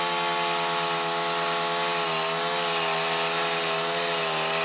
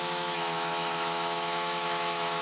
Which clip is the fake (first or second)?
second